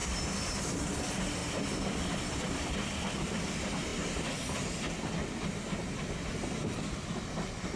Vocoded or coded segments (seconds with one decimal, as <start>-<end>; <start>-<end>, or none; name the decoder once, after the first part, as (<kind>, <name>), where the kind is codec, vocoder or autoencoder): 0.6-1.4 (vocoder, BigVGAN v2); 2.0-3.9